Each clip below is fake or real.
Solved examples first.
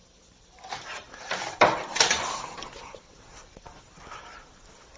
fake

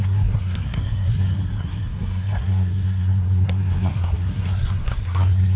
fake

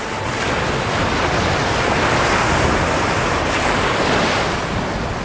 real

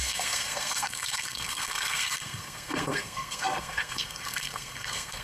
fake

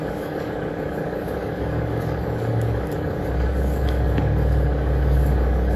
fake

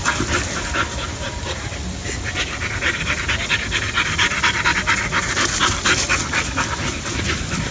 real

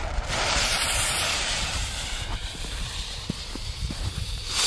fake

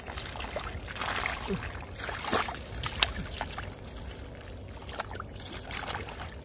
real